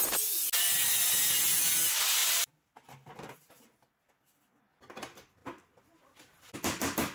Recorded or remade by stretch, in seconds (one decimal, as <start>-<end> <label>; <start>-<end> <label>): 0.0-2.2 recorded; 2.2-4.0 remade; 4.0-7.1 recorded